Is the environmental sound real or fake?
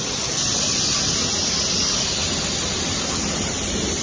real